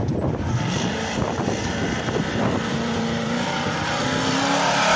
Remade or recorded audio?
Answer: remade